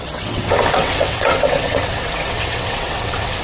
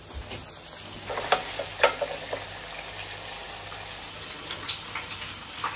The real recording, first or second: second